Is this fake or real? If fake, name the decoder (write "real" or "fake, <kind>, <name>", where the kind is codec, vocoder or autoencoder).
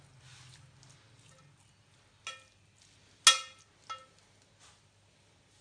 real